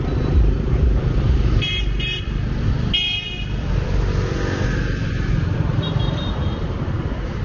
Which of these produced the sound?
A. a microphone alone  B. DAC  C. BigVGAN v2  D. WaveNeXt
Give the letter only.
A